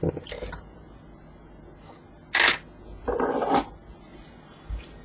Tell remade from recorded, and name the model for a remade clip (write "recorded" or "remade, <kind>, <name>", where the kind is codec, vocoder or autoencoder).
recorded